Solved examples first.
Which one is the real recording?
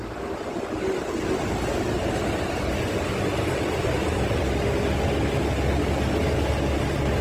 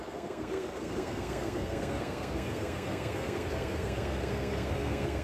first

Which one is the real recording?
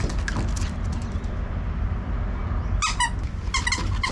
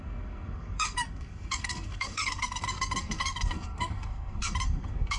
first